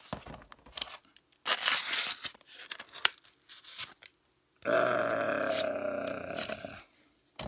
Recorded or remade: recorded